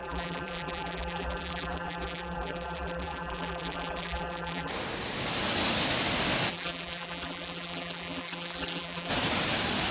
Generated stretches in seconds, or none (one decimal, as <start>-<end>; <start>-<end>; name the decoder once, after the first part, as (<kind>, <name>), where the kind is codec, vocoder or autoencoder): 0.0-4.7 (vocoder, BigVGAN v2); 6.5-9.1

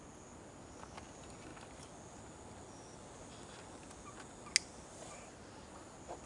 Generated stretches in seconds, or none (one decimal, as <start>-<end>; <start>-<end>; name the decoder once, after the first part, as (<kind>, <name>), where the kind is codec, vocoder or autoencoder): none

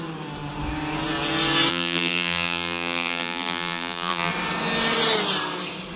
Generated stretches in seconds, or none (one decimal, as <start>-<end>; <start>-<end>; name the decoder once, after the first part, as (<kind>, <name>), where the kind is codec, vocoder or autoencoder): 1.7-4.3 (vocoder, BigVGAN v2)

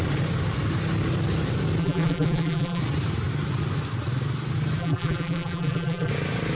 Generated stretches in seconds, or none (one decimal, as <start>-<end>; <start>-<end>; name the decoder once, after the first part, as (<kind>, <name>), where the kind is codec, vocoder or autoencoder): 1.8-2.8 (vocoder, BigVGAN v2); 4.8-6.1

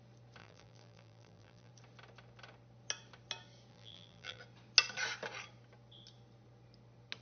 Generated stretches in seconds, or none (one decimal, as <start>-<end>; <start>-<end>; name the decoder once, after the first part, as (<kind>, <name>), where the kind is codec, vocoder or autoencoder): 0.4-1.7 (vocoder, BigVGAN v2); 3.7-4.4

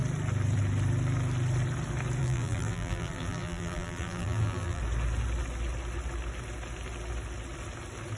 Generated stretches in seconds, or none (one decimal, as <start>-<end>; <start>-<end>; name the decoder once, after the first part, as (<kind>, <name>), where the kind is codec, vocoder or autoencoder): 2.2-4.8 (vocoder, BigVGAN v2)

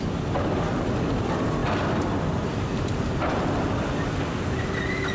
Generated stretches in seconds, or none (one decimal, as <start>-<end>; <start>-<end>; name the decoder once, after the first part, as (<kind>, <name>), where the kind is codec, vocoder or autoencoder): 1.6-4.4 (vocoder, BigVGAN v2)

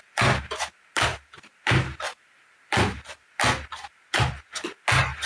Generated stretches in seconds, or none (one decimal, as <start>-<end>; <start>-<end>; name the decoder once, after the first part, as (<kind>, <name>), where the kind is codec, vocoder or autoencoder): none